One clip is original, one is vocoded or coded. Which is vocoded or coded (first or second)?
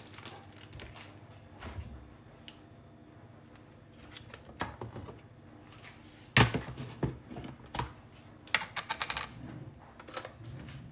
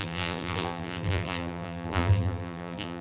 second